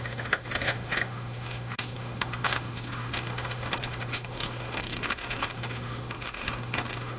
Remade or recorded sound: remade